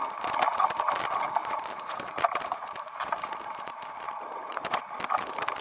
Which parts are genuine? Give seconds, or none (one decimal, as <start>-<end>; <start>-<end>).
0.0-1.4; 4.8-5.6